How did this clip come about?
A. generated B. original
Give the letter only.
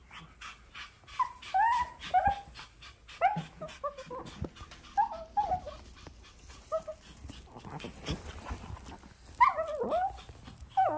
B